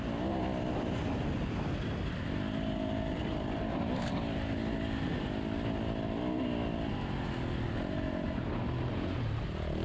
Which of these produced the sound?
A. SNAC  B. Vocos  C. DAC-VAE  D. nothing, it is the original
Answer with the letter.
D